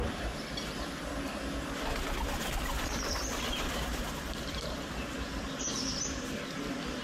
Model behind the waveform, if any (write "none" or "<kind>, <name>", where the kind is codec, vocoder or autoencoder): vocoder, BigVGAN v2